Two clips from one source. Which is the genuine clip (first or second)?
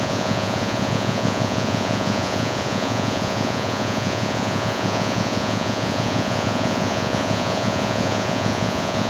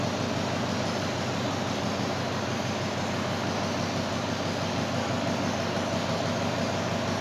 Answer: second